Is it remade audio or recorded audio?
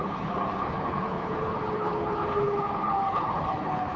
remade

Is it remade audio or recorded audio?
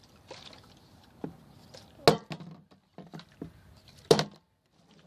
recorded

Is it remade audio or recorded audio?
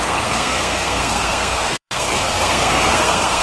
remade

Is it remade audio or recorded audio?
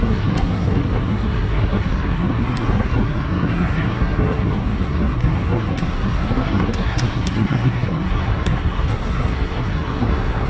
remade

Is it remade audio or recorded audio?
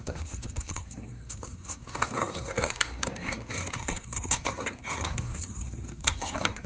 remade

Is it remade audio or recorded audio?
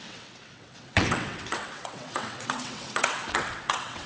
remade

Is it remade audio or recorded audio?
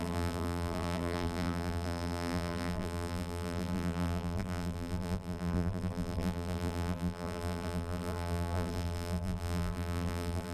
remade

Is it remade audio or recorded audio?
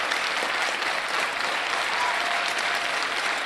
recorded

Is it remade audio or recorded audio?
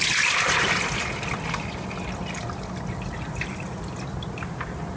recorded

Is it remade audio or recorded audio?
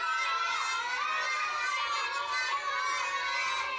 recorded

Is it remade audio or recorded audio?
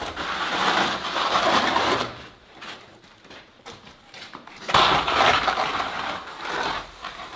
remade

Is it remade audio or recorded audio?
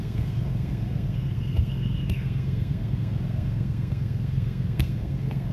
remade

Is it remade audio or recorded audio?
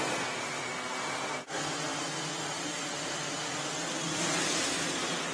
recorded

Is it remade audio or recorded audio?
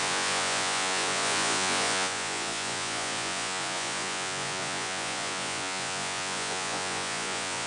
remade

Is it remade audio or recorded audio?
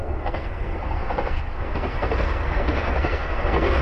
remade